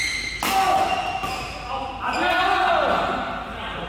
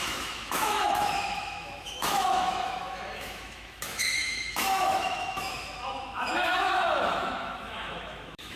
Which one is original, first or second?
first